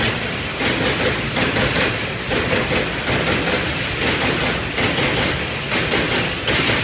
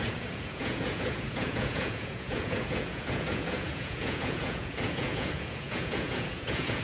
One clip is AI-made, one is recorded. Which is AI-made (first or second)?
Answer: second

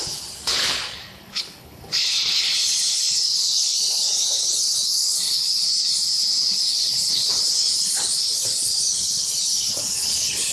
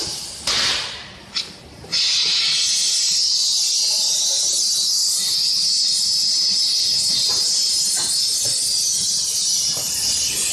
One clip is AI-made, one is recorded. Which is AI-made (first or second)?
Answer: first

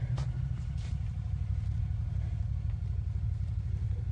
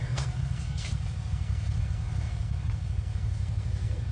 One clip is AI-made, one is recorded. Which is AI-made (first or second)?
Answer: second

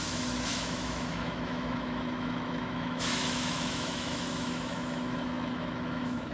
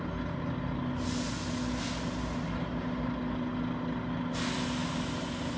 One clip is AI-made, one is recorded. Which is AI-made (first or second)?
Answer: first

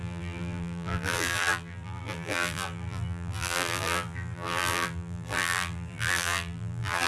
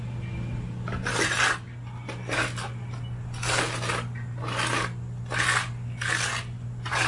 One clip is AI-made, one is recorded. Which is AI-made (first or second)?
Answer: first